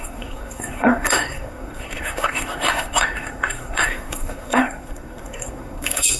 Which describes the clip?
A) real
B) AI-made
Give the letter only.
B